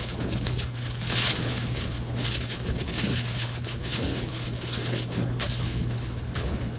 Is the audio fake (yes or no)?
yes